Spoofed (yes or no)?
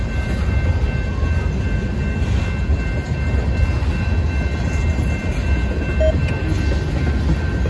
no